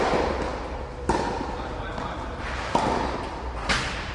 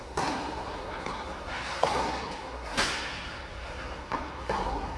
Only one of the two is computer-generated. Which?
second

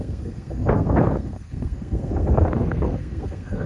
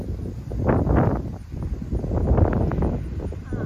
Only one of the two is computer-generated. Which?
first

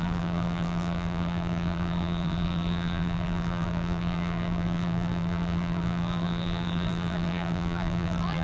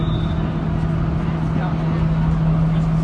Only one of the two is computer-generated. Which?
first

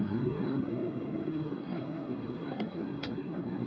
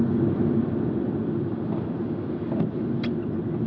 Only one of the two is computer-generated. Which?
first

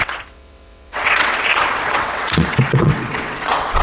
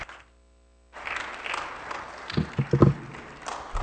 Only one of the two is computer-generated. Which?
first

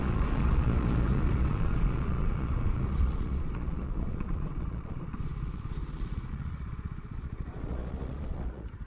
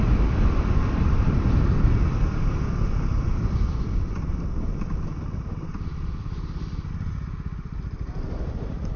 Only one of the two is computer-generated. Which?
first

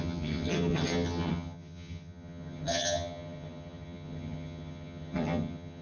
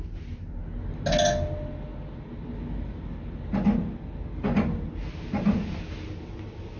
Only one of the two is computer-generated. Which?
first